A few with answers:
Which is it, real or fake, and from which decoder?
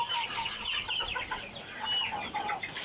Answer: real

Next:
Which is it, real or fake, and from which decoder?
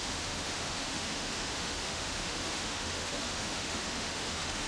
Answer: fake, autoencoder, DAC-VAE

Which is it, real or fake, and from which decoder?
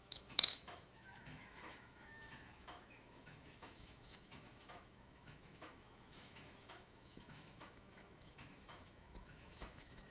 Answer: fake, autoencoder, DAC-VAE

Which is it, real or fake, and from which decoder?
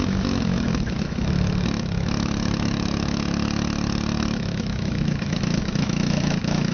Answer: fake, autoencoder, DAC-VAE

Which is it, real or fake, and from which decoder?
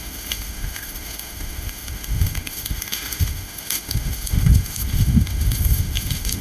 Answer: fake, autoencoder, DAC-VAE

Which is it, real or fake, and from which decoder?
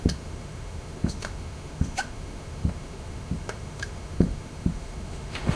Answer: fake, autoencoder, DAC-VAE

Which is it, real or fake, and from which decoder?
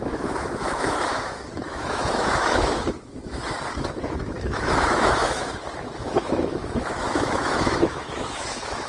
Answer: fake, autoencoder, DAC-VAE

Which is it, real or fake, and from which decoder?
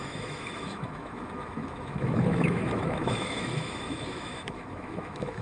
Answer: fake, autoencoder, DAC-VAE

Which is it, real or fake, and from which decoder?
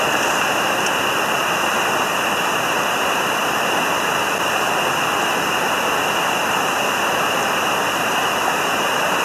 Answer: real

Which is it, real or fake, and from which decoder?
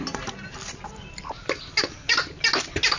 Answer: real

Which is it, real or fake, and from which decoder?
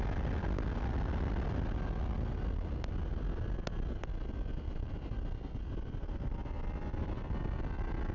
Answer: real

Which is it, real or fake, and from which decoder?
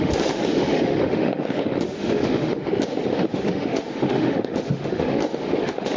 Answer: fake, autoencoder, DAC-VAE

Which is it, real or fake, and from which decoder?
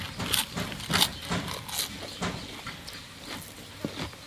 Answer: real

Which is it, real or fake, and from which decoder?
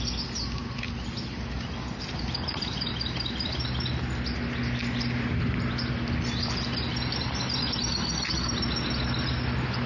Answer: real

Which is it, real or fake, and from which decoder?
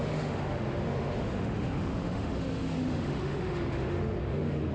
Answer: fake, autoencoder, DAC-VAE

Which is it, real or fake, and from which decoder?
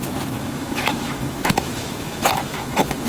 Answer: fake, autoencoder, DAC-VAE